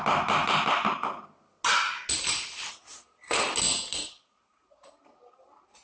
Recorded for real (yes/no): yes